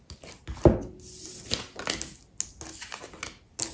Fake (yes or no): no